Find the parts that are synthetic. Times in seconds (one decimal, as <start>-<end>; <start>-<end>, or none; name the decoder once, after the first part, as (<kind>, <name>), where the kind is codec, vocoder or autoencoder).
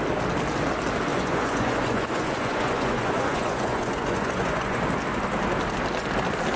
1.1-4.8 (vocoder, Vocos)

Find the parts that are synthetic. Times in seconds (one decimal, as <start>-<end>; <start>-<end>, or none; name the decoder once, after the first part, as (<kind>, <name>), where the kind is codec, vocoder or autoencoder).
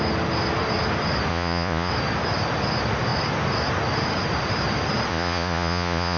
1.3-1.9 (vocoder, Vocos); 5.1-6.2